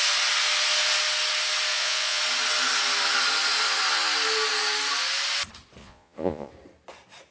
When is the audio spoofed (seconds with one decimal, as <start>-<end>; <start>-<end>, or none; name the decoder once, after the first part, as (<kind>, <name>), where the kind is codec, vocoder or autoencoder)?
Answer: 1.7-2.2 (vocoder, Vocos); 5.8-6.5

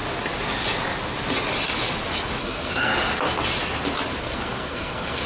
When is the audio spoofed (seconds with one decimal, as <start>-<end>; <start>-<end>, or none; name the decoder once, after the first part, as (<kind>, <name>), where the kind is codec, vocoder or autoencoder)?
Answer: 2.4-2.9 (codec, SNAC); 4.2-5.3

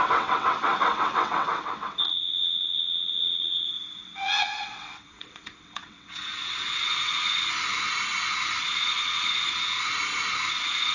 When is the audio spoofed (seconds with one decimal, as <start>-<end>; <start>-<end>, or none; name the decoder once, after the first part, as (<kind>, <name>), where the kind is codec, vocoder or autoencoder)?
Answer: 0.0-7.5 (vocoder, WaveNeXt); 8.6-9.8; 10.5-10.9